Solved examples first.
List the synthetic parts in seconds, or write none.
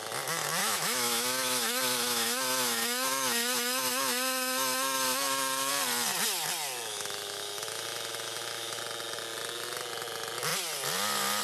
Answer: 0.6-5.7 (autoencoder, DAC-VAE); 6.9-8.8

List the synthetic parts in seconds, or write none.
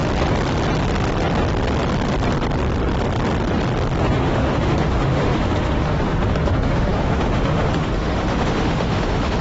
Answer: 4.0-9.4 (autoencoder, DAC-VAE)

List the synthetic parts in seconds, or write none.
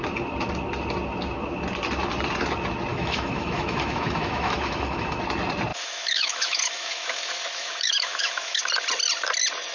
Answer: 2.9-5.2 (autoencoder, DAC-VAE); 5.7-8.6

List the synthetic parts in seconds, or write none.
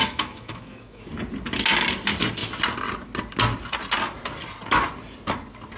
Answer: 0.0-1.0 (autoencoder, DAC-VAE)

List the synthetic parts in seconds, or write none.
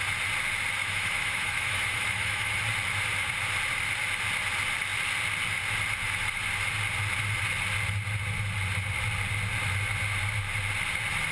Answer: 0.8-2.5 (autoencoder, DAC-VAE)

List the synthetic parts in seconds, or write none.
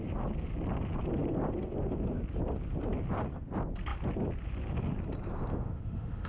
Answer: 5.5-6.3 (autoencoder, DAC-VAE)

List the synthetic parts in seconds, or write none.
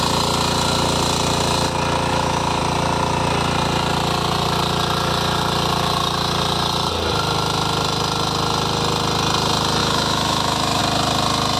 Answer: 2.1-2.6 (autoencoder, DAC-VAE); 9.8-10.8